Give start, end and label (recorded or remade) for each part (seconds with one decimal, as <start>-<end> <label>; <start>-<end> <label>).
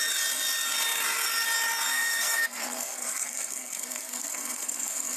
0.0-1.9 recorded; 1.9-5.2 remade